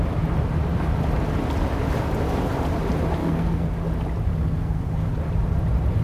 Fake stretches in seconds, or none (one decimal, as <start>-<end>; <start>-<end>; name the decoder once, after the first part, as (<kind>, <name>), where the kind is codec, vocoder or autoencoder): 3.2-3.7 (codec, SNAC); 4.3-5.1